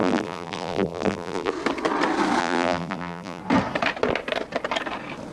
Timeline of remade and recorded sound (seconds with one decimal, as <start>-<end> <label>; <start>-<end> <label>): 0.0-1.5 remade; 1.5-2.4 recorded; 2.4-3.4 remade; 3.4-5.3 recorded